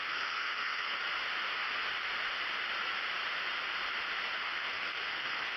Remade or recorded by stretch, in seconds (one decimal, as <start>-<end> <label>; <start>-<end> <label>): 0.0-1.0 remade; 1.0-4.4 recorded; 4.4-5.6 remade